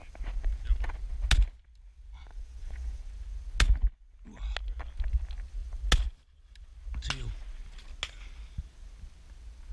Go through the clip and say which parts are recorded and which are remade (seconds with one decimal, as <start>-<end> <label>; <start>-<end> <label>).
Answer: 0.0-2.3 recorded; 2.3-3.0 remade; 3.0-9.7 recorded